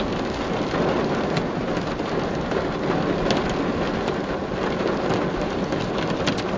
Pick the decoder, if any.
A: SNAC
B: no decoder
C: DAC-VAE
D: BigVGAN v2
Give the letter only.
B